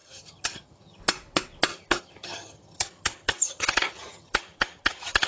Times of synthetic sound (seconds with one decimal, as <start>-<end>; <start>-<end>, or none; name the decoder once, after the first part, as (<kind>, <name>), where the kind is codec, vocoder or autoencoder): 0.0-1.0 (vocoder, HiFi-GAN); 1.7-5.3